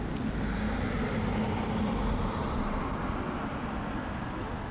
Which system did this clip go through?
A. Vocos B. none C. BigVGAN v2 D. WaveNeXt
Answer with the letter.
B